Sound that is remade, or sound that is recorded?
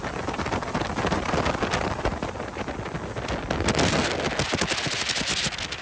recorded